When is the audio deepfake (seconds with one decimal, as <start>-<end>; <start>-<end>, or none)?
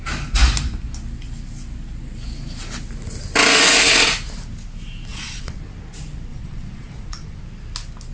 5.1-5.6; 6.3-7.4